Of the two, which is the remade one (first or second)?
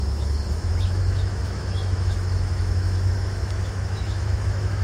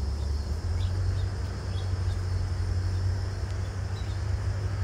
first